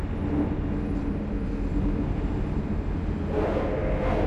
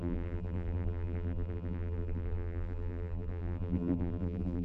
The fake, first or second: second